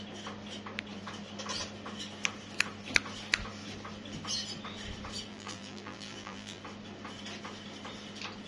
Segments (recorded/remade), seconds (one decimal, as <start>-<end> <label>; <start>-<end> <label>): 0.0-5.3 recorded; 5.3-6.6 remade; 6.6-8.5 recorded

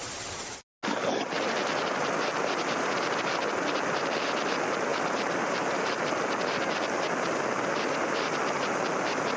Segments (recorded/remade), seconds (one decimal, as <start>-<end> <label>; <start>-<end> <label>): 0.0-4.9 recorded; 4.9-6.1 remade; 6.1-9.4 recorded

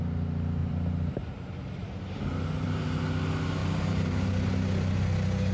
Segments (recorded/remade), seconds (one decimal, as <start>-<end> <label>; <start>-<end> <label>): 0.0-0.6 recorded; 0.6-3.0 remade; 3.0-3.6 recorded; 3.6-4.6 remade; 4.6-5.5 recorded

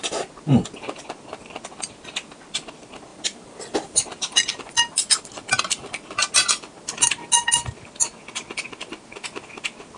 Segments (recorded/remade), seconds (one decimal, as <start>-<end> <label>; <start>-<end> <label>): 0.0-3.1 recorded; 3.1-5.3 remade; 5.3-10.0 recorded